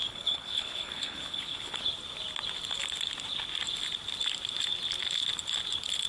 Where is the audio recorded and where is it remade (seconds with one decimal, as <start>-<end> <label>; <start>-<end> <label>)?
0.0-1.8 remade; 1.8-6.1 recorded